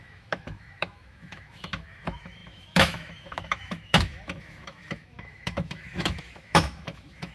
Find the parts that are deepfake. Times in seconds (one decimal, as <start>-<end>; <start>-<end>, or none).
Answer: 0.0-7.3